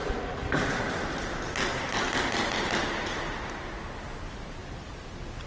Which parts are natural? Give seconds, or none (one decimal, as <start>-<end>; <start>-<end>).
0.0-5.5